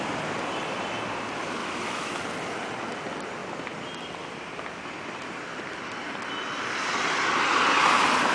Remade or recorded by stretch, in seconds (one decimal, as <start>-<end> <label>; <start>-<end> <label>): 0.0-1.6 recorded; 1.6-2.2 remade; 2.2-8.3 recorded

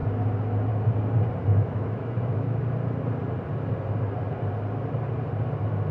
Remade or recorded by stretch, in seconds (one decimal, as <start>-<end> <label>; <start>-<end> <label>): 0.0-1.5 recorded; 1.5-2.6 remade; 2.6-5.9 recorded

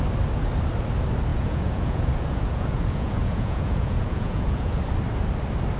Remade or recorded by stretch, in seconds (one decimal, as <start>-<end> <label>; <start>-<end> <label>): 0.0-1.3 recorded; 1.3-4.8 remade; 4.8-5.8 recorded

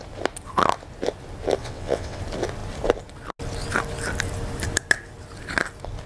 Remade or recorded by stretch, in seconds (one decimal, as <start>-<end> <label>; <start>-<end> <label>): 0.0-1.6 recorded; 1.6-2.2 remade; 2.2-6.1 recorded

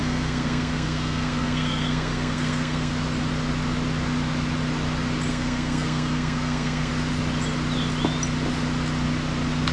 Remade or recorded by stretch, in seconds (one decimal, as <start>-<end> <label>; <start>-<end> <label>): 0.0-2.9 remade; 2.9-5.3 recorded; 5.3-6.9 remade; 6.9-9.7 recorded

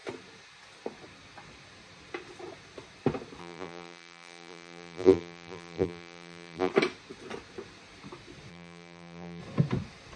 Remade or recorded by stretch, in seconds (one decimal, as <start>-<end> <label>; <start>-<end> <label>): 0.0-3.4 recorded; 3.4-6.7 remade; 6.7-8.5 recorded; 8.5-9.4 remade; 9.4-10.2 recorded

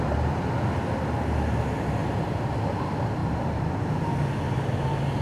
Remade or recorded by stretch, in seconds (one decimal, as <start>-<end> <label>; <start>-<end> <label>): 0.0-3.2 recorded; 3.2-3.8 remade; 3.8-5.2 recorded

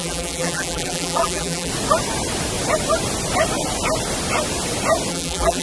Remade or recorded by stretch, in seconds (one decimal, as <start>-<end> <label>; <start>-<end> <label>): 0.0-1.7 remade; 1.7-5.1 recorded; 5.1-5.6 remade